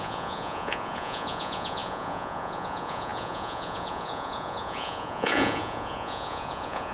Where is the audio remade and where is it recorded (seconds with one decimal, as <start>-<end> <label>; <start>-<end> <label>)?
0.0-6.9 remade